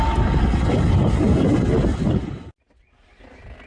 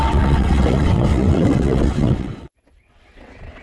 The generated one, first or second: second